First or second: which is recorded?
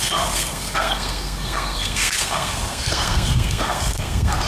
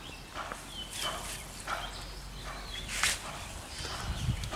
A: second